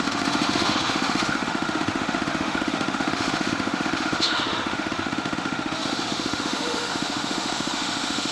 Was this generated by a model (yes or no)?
yes